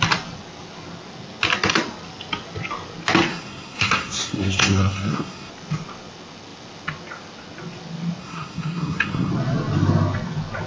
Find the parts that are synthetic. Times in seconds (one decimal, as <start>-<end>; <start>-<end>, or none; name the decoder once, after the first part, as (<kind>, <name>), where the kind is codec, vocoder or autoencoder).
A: 3.3-5.5 (codec, SNAC); 8.2-9.3